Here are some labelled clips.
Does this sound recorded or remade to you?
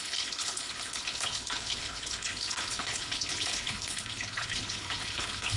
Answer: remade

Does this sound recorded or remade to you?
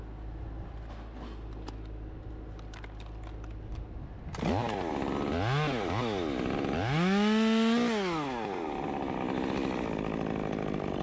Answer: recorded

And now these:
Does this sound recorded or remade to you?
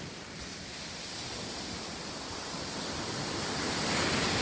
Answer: recorded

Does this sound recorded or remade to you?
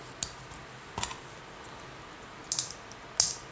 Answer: recorded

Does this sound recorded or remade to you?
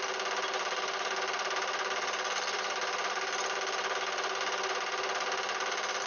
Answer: recorded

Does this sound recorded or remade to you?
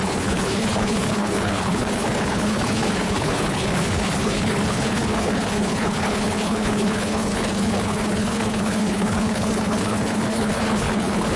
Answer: remade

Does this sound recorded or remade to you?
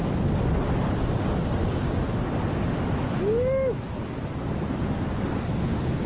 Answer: recorded